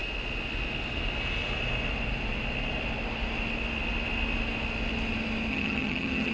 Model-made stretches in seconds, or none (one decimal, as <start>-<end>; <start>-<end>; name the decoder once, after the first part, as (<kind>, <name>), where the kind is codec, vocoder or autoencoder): 5.5-6.3 (vocoder, HiFi-GAN)